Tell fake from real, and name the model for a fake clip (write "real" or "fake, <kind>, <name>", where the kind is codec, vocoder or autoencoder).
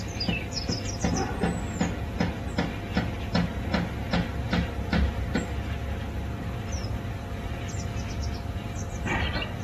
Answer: real